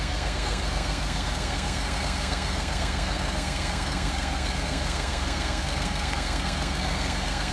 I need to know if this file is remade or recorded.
remade